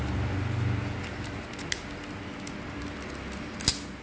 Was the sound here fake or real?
real